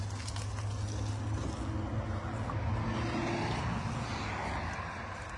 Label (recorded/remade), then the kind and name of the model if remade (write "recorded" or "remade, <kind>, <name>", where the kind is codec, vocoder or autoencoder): recorded